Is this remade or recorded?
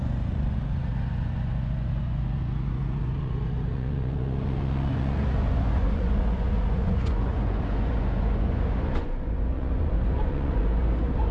remade